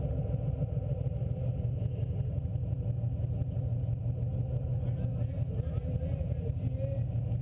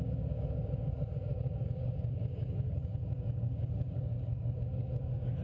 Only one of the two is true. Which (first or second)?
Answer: first